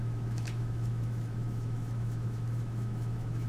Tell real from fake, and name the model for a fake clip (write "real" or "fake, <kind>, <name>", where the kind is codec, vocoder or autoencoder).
fake, autoencoder, DAC-VAE